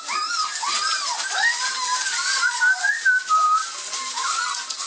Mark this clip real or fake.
real